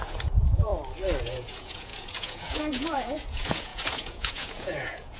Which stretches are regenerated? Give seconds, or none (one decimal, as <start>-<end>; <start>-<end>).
0.0-0.7; 1.2-5.2